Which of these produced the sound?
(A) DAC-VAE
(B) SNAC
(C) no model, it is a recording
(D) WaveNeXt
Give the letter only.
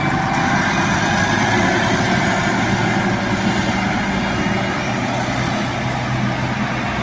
C